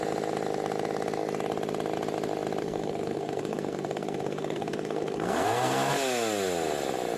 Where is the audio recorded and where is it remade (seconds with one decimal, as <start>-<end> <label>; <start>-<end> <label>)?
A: 0.0-2.6 recorded; 2.6-5.9 remade; 5.9-7.2 recorded